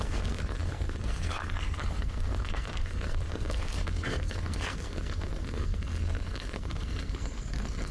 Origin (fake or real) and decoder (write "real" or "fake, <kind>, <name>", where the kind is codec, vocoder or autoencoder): fake, codec, SNAC